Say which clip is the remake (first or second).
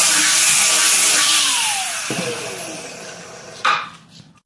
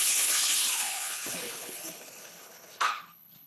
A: second